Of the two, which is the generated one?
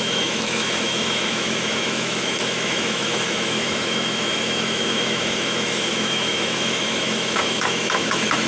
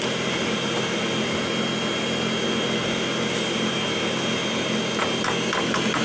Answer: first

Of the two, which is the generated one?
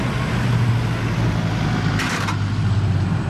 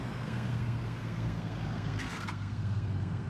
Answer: second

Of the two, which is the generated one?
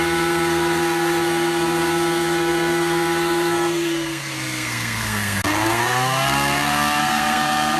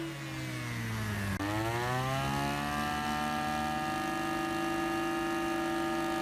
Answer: first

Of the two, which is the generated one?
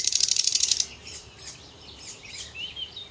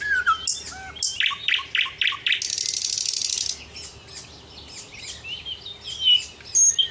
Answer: first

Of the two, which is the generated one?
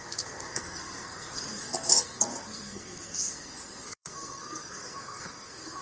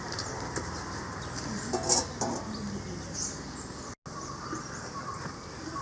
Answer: first